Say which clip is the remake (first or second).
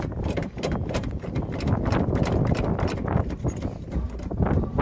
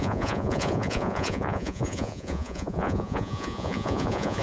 second